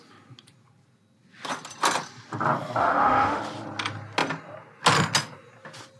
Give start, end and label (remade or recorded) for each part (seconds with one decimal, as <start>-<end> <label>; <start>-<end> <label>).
0.0-2.8 recorded; 2.8-3.4 remade; 3.4-6.0 recorded